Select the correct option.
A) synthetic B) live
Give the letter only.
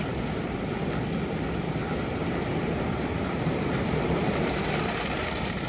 A